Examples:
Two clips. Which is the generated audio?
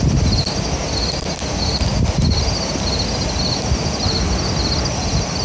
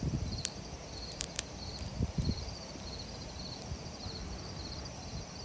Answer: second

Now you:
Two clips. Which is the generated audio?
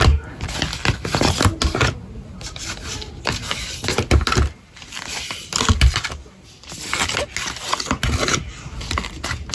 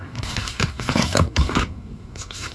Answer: second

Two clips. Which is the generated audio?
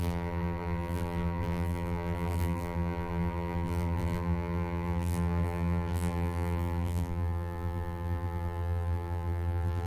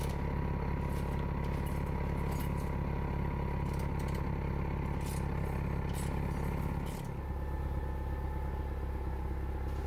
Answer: first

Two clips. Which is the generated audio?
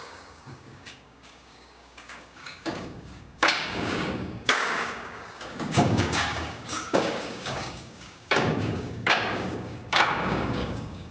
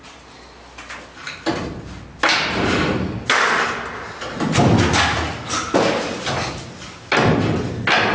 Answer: first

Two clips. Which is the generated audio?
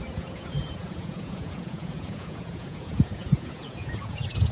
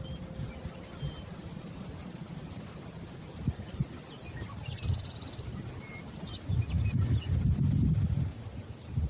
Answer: first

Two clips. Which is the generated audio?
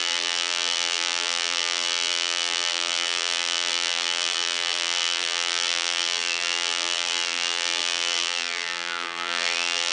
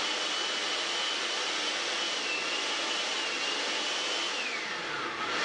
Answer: first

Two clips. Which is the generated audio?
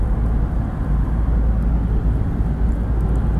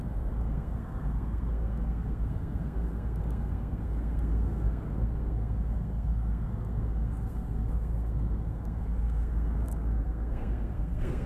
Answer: second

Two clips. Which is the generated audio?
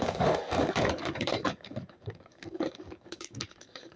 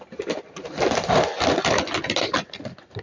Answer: first